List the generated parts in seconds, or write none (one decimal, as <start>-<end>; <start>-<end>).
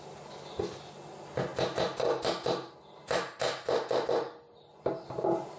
none